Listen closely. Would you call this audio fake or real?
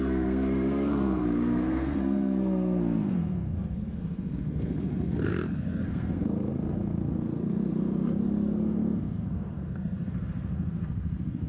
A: fake